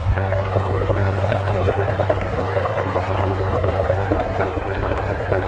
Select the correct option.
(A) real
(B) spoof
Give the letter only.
B